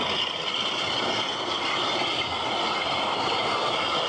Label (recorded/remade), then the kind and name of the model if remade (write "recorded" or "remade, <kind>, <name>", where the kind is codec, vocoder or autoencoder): recorded